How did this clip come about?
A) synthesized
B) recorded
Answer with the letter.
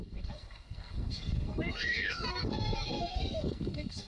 A